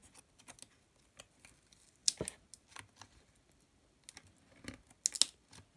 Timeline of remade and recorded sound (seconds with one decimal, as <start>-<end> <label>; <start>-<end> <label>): 0.0-5.8 recorded